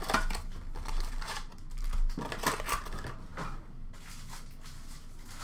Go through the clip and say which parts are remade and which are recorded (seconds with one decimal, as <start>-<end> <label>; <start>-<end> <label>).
0.0-5.4 recorded